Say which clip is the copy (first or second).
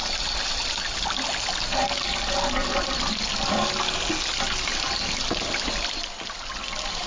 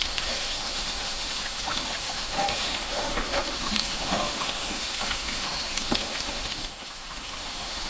second